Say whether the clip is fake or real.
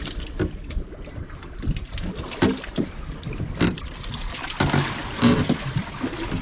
real